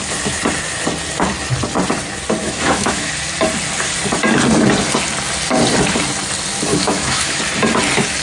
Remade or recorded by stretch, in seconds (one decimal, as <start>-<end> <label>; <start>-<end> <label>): 0.0-2.4 recorded; 2.4-3.1 remade; 3.1-6.7 recorded; 6.7-7.4 remade; 7.4-8.2 recorded